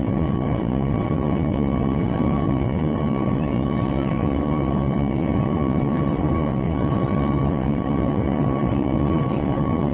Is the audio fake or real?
fake